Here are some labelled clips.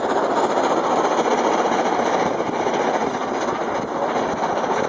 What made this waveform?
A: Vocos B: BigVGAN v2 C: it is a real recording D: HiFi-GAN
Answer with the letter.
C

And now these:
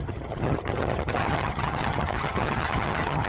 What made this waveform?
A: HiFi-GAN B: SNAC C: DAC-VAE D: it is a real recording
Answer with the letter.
A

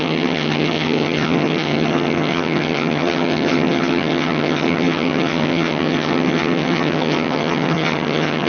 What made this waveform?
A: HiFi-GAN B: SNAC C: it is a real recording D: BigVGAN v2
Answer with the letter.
A